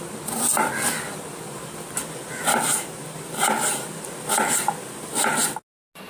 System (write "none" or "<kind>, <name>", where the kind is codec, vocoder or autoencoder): none